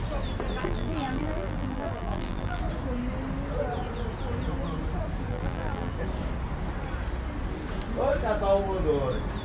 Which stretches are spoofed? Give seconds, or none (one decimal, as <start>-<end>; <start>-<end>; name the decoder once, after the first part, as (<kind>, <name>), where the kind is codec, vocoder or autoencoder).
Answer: 0.6-2.6 (vocoder, BigVGAN v2); 5.3-5.9